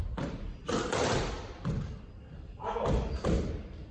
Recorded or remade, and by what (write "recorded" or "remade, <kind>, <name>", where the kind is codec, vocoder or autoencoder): remade, vocoder, BigVGAN v2